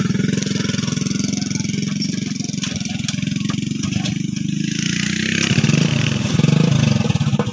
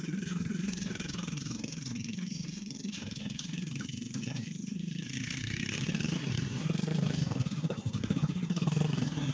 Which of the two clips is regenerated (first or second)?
second